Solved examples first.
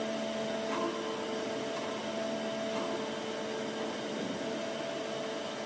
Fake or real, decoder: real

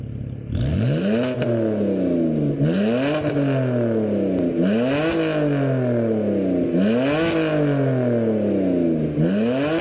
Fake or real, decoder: real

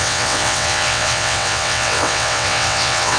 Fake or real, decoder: fake, vocoder, WaveNeXt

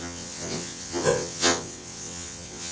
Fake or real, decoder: fake, vocoder, WaveNeXt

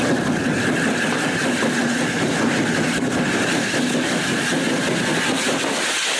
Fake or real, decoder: real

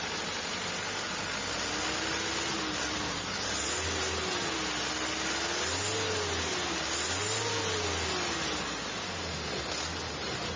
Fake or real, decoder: real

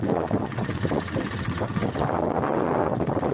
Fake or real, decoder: fake, vocoder, WaveNeXt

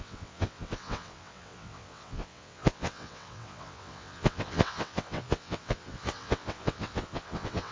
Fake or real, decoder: fake, vocoder, WaveNeXt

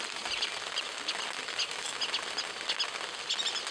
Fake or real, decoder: real